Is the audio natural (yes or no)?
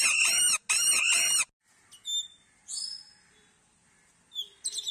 yes